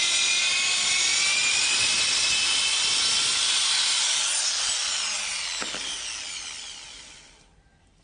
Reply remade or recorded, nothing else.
recorded